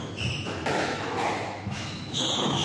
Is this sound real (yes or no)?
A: no